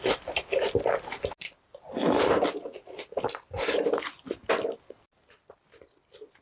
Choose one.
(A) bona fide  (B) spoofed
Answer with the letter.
A